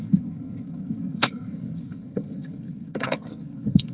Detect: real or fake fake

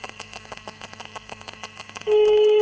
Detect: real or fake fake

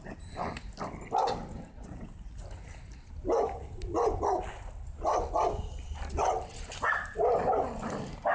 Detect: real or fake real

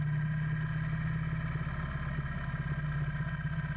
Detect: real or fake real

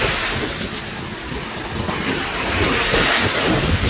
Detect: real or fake real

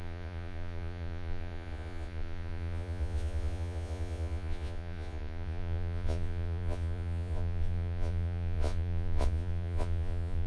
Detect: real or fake fake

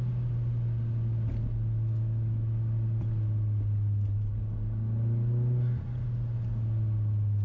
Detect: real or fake real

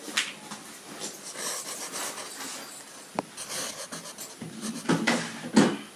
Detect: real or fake real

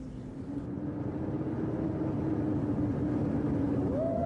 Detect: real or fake real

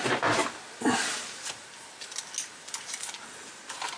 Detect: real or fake real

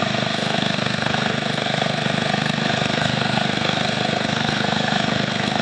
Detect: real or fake fake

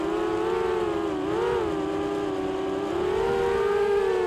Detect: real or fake real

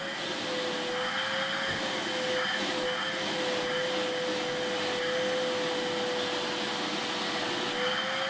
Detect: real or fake real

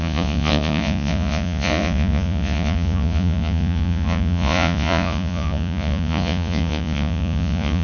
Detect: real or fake fake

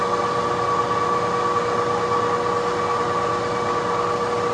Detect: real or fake real